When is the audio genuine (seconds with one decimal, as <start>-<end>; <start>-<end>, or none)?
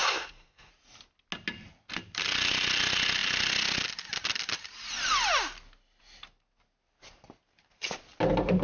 0.7-8.6